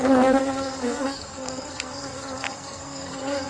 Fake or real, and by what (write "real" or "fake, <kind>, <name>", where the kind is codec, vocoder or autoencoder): fake, codec, SNAC